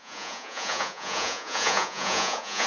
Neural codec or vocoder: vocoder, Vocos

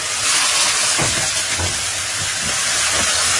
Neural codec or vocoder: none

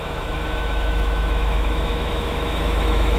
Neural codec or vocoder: autoencoder, DAC-VAE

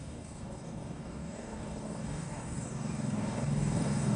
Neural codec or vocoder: codec, DAC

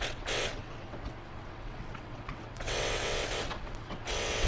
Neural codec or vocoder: vocoder, WaveNeXt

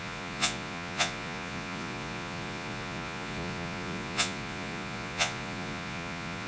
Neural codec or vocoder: vocoder, Vocos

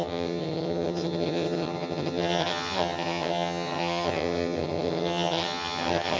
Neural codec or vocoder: vocoder, HiFi-GAN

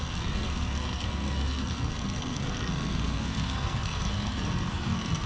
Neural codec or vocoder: codec, SNAC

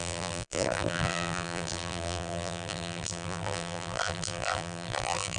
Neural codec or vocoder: vocoder, BigVGAN v2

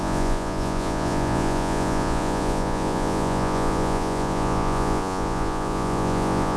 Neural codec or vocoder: vocoder, Vocos